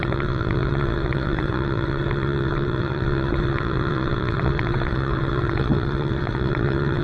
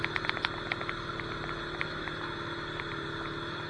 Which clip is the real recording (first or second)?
second